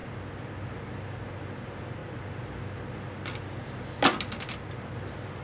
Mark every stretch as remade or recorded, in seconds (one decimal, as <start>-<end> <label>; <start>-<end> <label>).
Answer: 0.0-5.4 recorded